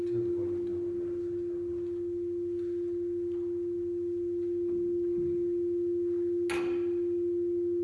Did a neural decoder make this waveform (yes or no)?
no